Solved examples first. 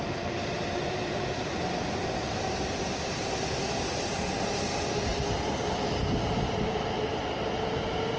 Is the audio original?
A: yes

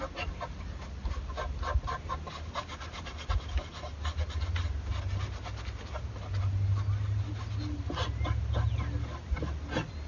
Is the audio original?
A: yes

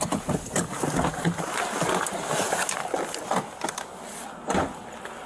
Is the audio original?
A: yes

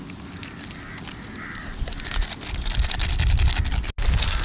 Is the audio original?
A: yes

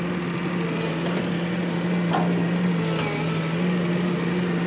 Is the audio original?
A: yes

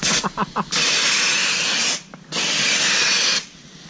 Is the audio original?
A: yes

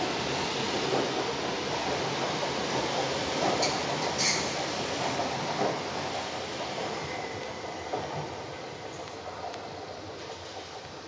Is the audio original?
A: yes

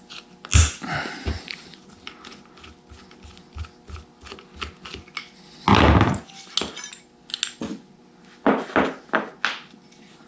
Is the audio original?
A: yes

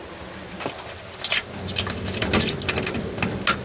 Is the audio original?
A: yes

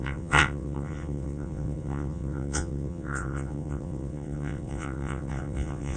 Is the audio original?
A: no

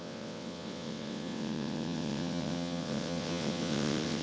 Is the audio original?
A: no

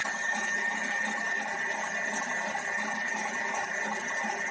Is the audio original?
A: yes